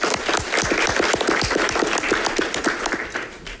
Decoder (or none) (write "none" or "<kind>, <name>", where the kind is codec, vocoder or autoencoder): none